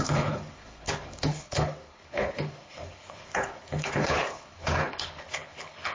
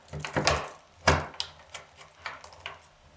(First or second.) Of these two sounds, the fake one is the first